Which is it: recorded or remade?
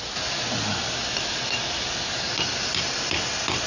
recorded